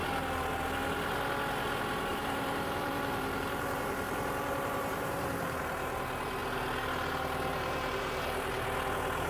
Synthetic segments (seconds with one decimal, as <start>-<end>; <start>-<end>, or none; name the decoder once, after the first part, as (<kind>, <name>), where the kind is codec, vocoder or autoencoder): 2.1-5.6 (vocoder, BigVGAN v2); 7.5-8.5